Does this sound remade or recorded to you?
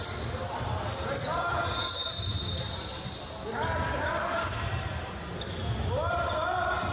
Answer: recorded